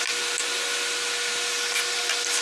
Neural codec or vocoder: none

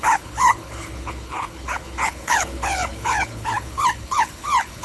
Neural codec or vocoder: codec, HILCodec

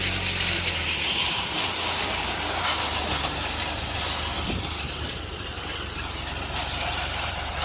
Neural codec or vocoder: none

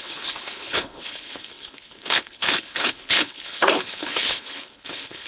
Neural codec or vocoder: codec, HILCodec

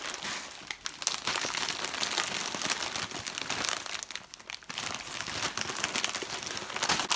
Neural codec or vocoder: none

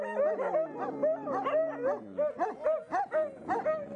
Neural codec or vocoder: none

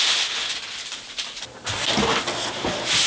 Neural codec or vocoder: none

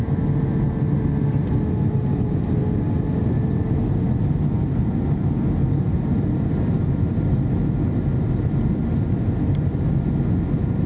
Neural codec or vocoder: none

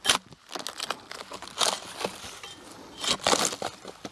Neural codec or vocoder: none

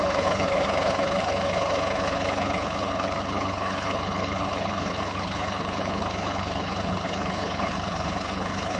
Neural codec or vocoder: codec, HILCodec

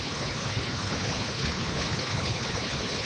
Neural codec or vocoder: codec, HILCodec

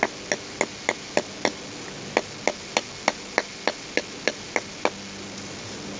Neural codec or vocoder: none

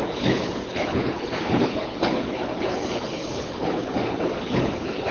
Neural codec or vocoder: codec, HILCodec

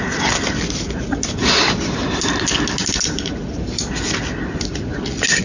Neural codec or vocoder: none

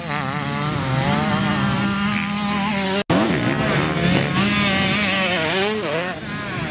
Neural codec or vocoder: none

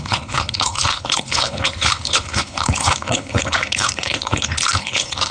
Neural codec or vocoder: codec, HILCodec